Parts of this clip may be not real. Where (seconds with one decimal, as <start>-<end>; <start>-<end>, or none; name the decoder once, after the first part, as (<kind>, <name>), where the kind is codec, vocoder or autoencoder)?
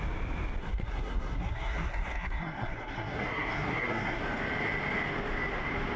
0.6-4.2 (codec, SNAC)